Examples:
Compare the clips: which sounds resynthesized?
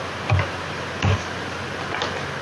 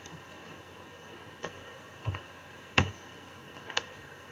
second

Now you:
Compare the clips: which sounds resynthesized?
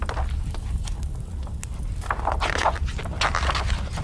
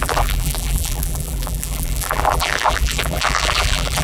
second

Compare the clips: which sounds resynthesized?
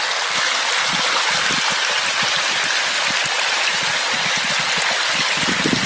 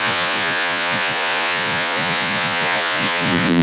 second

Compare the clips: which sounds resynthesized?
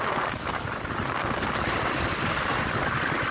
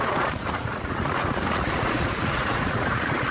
second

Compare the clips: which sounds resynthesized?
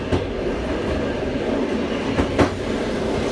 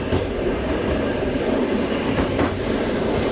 second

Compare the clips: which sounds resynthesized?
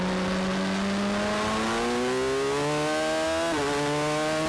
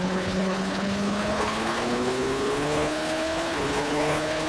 second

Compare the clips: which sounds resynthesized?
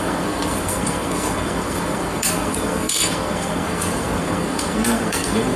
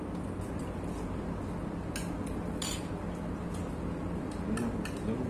first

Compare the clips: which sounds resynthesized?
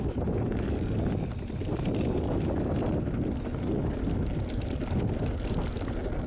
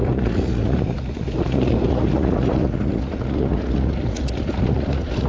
second